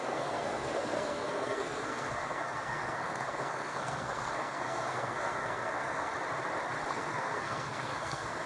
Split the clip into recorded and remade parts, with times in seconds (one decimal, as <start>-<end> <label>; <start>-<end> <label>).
0.0-6.1 remade; 6.1-6.9 recorded; 6.9-8.5 remade